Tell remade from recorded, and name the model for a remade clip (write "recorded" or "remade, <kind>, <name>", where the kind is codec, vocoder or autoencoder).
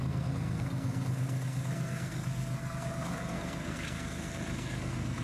remade, codec, SNAC